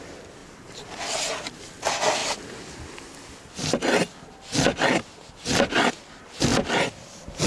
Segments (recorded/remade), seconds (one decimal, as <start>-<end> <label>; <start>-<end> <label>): 0.0-0.4 recorded; 0.4-1.5 remade; 1.5-6.5 recorded; 6.5-7.5 remade